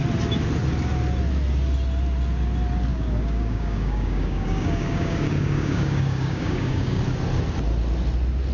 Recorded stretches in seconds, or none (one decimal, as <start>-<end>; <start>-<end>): 0.0-2.9; 7.0-8.5